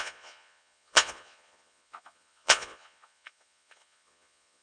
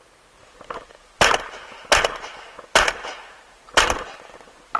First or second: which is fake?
first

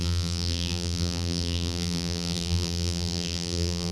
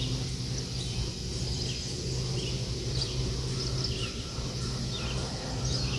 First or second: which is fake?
first